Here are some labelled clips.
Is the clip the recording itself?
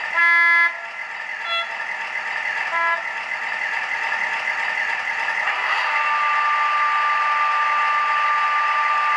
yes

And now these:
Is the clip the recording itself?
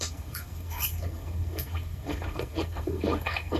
no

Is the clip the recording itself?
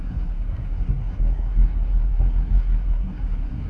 no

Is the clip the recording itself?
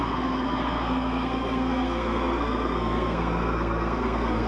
no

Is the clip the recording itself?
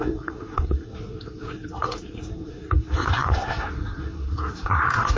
no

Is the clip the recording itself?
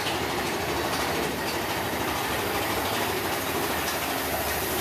yes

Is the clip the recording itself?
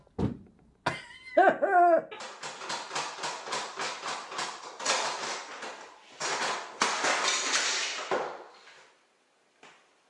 yes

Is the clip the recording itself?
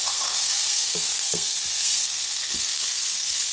no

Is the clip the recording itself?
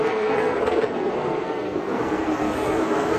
no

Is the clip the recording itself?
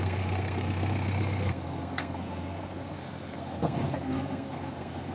no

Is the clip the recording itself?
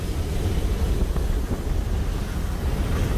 yes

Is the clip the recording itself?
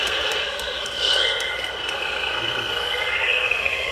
no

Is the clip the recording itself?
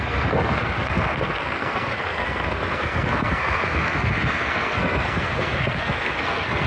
no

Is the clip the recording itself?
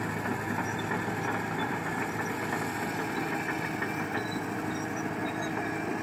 yes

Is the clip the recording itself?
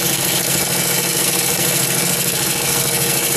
no